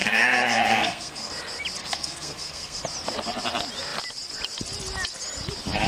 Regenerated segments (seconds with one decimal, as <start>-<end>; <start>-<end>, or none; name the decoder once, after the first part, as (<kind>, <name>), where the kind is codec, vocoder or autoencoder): 0.0-1.3 (codec, SNAC); 1.8-2.8